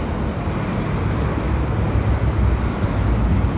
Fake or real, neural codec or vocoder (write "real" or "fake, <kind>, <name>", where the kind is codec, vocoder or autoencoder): real